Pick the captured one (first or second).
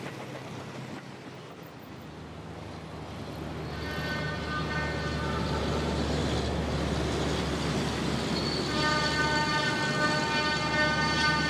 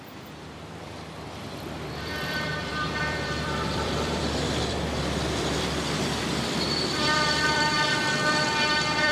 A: first